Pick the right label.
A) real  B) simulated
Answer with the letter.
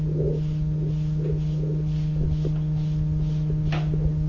A